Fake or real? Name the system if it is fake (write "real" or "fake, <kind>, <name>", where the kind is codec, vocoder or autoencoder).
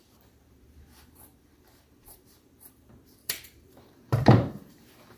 fake, vocoder, BigVGAN v2